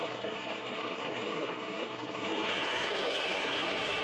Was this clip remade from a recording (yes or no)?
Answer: yes